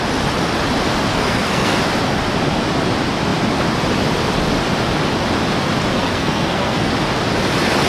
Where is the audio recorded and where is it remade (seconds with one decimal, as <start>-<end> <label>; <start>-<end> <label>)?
0.0-1.1 recorded; 1.1-1.8 remade; 1.8-5.9 recorded; 5.9-6.9 remade; 6.9-7.9 recorded